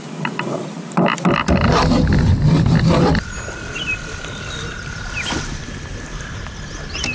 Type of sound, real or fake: real